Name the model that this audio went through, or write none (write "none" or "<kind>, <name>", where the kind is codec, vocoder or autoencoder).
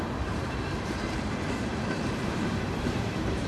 vocoder, BigVGAN v2